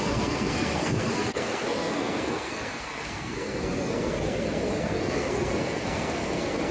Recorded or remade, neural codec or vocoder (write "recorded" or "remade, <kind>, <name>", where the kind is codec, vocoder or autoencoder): remade, codec, SNAC